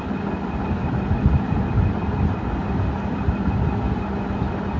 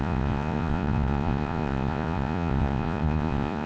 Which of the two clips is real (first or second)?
first